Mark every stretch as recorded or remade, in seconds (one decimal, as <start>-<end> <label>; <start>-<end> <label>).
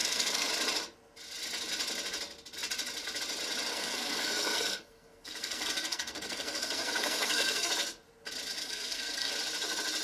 0.0-0.5 remade; 0.5-3.7 recorded; 3.7-7.7 remade; 7.7-8.6 recorded; 8.6-9.3 remade; 9.3-10.0 recorded